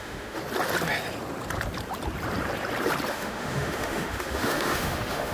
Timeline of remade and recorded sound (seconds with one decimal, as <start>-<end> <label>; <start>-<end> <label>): 0.0-0.4 remade; 0.4-3.1 recorded; 3.1-5.3 remade